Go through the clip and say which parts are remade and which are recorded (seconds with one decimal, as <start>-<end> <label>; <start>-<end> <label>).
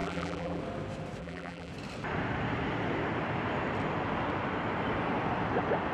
0.0-0.6 remade; 0.6-1.2 recorded; 1.2-1.7 remade; 1.7-5.9 recorded